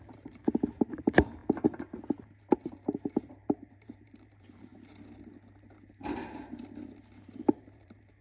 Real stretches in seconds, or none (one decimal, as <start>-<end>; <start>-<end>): 4.7-7.2